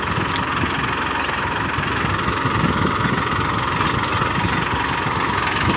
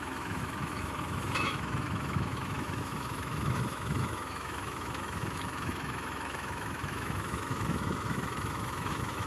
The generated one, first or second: second